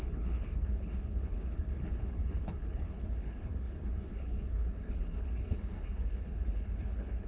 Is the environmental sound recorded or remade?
remade